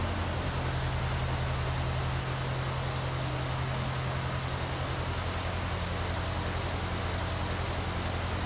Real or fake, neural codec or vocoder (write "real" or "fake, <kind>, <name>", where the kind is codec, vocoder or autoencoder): real